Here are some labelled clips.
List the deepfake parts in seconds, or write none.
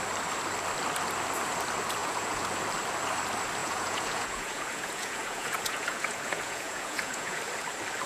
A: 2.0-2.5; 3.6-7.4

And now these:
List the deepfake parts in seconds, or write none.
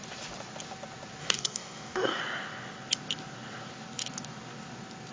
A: 1.2-2.2